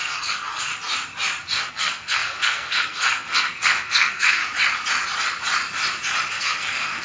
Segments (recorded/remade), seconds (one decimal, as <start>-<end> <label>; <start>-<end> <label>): 0.0-0.7 remade; 0.7-1.7 recorded; 1.7-4.4 remade; 4.4-6.3 recorded; 6.3-7.0 remade